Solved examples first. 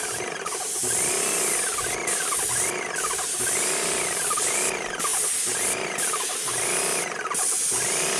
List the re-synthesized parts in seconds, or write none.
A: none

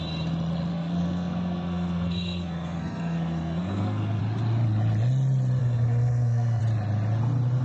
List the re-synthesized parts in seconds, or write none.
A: 0.7-4.2 (codec, SNAC); 5.6-6.6

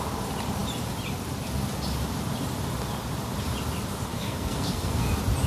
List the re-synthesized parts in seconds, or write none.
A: 4.1-5.1 (codec, SNAC)

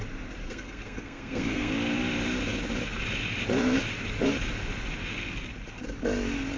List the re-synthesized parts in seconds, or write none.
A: 0.4-1.7 (codec, SNAC)

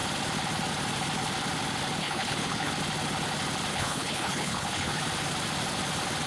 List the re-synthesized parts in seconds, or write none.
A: 2.0-2.7 (codec, HILCodec); 3.7-5.0

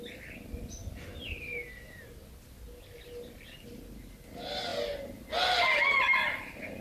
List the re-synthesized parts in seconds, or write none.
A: none

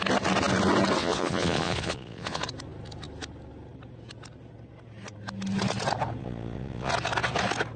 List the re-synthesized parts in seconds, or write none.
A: 1.0-2.4 (vocoder, Vocos); 6.2-6.9

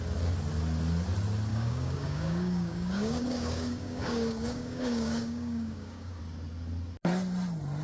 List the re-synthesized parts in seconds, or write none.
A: 1.5-6.2 (codec, DAC)